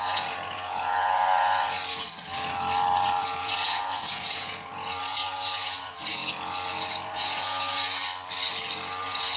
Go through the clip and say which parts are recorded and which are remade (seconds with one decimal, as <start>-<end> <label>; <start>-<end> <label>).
0.0-1.8 remade; 1.8-3.2 recorded; 3.2-6.2 remade; 6.2-6.9 recorded; 6.9-8.0 remade; 8.0-9.0 recorded; 9.0-9.4 remade

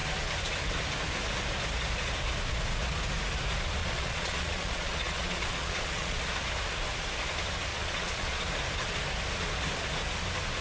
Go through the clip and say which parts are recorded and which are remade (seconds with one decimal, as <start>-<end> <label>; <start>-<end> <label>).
0.0-3.8 recorded; 3.8-6.2 remade; 6.2-7.7 recorded; 7.7-8.4 remade; 8.4-10.6 recorded

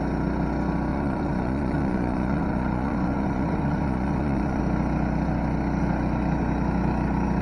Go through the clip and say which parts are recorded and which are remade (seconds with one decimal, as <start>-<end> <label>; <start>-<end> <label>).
0.0-0.9 recorded; 0.9-4.6 remade; 4.6-7.4 recorded

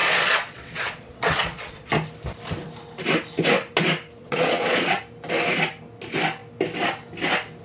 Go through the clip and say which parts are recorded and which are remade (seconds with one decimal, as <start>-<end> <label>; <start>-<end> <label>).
0.0-1.9 remade; 1.9-4.2 recorded; 4.2-5.0 remade; 5.0-7.6 recorded

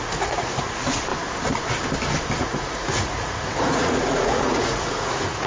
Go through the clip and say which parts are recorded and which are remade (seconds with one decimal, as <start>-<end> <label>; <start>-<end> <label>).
0.0-1.1 remade; 1.1-2.4 recorded; 2.4-5.5 remade